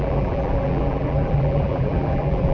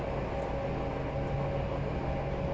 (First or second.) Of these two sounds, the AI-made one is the first